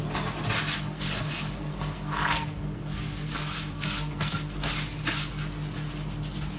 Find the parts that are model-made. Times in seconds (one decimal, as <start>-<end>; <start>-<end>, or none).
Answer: 0.7-4.7